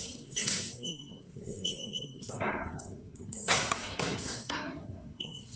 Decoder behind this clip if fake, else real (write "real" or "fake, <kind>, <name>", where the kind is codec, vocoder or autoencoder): fake, codec, SNAC